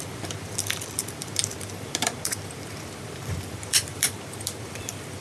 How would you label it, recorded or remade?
remade